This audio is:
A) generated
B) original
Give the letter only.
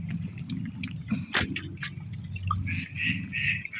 B